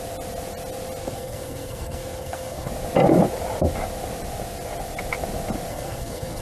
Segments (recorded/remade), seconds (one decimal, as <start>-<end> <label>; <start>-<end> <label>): 0.0-1.0 recorded; 1.0-2.7 remade; 2.7-5.7 recorded; 5.7-6.4 remade